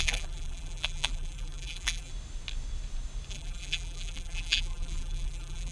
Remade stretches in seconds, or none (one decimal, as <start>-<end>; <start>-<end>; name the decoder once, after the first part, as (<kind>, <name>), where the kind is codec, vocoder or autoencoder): 0.0-2.1 (vocoder, BigVGAN v2); 3.3-5.7

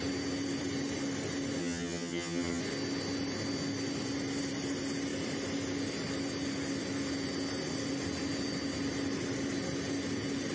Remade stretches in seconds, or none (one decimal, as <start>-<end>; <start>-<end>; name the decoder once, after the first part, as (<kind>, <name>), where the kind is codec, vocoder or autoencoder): 1.6-2.6 (vocoder, HiFi-GAN)

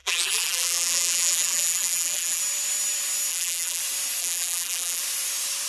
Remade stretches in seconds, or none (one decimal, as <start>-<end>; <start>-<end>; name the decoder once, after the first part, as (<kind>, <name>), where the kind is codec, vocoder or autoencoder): 0.0-2.4 (vocoder, BigVGAN v2); 3.3-3.8; 4.2-5.0

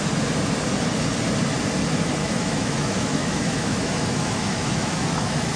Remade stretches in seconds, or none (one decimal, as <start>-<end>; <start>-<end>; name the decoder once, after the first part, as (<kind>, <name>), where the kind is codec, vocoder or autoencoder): 2.2-5.6 (autoencoder, DAC-VAE)

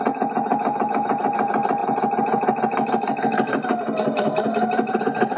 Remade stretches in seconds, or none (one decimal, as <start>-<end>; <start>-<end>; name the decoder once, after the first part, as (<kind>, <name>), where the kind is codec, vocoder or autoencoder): none

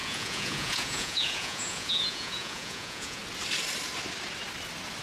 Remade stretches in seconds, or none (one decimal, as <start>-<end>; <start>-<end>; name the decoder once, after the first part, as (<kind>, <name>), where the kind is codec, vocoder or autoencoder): 0.0-3.2 (vocoder, Vocos)

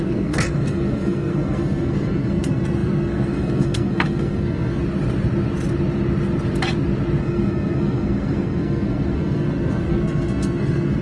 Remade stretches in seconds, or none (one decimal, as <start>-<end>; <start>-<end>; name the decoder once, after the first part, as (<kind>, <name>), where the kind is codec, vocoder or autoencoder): 0.0-4.8 (codec, SNAC); 7.2-11.0